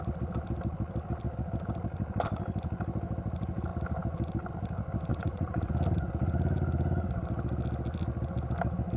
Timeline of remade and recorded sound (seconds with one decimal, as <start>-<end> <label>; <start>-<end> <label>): 0.0-5.1 recorded; 5.1-5.7 remade; 5.7-9.0 recorded